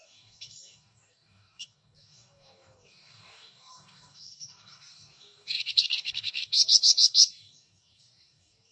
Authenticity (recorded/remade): remade